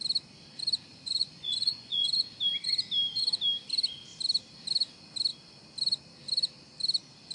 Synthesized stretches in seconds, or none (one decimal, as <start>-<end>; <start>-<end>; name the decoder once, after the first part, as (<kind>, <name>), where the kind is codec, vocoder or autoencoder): 0.9-2.1 (vocoder, Vocos)